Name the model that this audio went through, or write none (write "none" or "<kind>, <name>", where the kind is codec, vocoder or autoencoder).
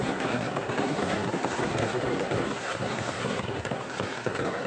codec, SNAC